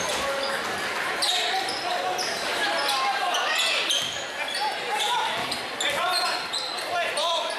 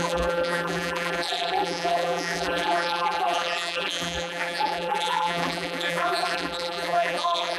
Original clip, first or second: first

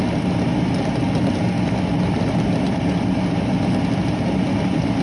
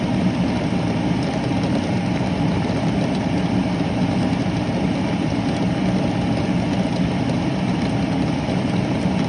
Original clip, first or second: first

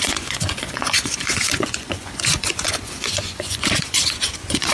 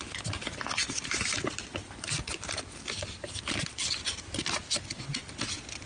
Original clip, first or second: second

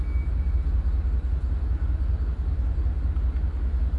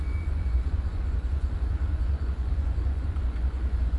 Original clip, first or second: first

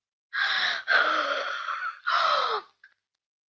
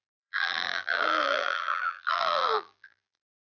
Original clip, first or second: first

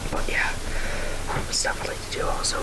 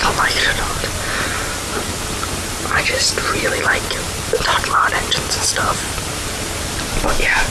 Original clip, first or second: first